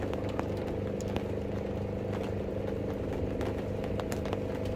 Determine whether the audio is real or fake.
real